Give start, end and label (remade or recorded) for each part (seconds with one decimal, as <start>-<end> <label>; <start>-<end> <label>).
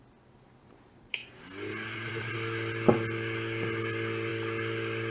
0.0-5.1 recorded